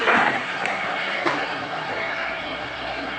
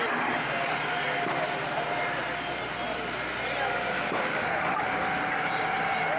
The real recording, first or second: second